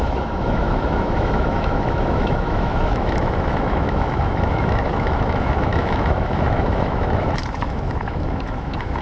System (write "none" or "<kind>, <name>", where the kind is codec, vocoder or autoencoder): autoencoder, DAC-VAE